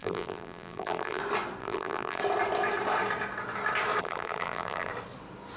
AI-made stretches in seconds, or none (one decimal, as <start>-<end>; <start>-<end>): 0.0-1.2; 1.6-2.2; 4.0-4.9